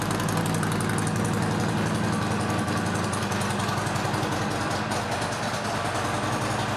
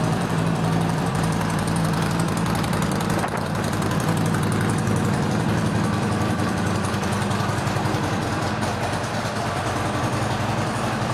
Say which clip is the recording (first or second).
first